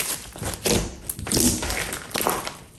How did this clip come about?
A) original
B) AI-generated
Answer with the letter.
A